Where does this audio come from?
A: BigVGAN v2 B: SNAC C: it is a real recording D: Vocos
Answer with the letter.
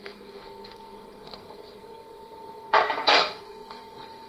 B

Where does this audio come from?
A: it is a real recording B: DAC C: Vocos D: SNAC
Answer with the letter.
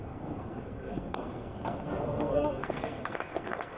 D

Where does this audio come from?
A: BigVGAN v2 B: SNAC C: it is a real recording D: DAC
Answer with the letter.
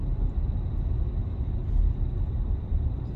C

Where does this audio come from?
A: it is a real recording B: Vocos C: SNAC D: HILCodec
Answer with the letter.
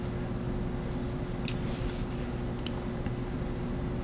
A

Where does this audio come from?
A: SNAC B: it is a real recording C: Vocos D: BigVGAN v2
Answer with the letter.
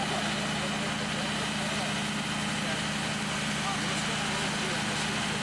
B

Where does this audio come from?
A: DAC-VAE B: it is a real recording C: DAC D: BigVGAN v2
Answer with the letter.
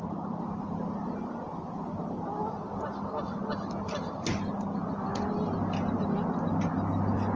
B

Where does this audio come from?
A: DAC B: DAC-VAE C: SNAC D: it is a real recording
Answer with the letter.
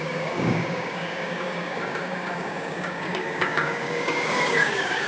A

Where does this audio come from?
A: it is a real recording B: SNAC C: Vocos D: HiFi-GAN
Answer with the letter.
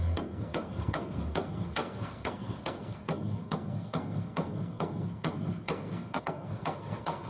B